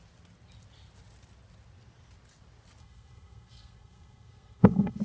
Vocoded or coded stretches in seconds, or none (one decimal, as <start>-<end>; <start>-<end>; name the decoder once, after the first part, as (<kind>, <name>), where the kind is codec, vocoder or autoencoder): 2.8-5.0 (codec, SNAC)